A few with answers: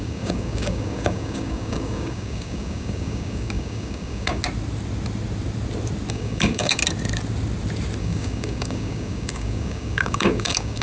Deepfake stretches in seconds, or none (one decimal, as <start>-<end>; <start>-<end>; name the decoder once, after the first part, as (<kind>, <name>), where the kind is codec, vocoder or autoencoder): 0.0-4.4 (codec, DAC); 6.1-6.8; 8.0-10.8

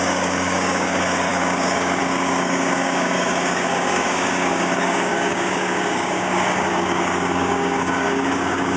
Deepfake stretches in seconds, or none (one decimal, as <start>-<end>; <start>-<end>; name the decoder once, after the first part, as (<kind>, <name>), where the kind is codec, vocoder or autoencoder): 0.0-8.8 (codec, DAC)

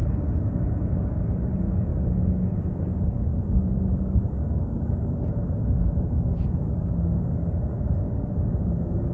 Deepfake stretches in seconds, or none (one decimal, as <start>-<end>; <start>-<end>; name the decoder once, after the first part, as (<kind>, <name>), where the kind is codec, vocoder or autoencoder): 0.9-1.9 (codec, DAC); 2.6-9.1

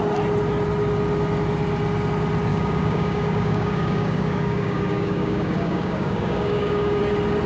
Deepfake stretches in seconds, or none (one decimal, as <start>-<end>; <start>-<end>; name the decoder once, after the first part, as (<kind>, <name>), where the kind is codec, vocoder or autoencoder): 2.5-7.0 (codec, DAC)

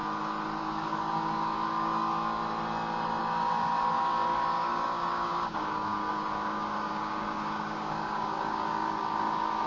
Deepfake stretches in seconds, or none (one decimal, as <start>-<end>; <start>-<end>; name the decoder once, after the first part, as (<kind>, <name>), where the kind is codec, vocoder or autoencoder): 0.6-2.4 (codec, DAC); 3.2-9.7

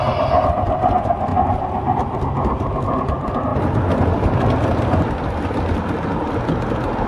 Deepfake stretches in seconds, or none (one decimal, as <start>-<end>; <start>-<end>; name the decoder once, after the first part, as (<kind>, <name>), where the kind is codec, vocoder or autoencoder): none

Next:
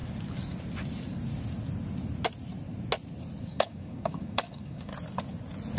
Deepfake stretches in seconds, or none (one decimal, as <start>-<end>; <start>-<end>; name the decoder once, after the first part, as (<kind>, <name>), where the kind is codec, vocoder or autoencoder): 3.4-4.9 (codec, DAC)